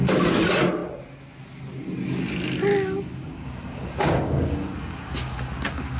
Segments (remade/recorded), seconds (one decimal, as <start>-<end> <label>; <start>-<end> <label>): 0.0-2.7 recorded; 2.7-6.0 remade